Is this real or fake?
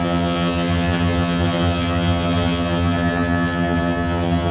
fake